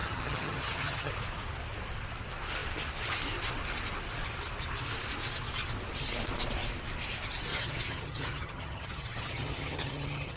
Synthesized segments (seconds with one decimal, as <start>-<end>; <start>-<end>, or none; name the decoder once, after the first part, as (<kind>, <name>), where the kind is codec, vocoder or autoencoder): 0.0-1.1 (vocoder, HiFi-GAN); 7.5-10.4